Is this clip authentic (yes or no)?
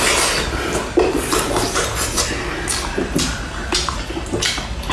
yes